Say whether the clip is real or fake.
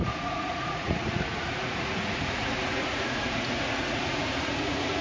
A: fake